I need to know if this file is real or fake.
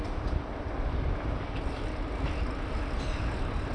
real